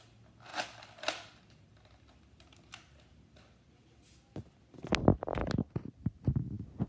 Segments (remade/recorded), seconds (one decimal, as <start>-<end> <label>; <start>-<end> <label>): 0.0-6.9 recorded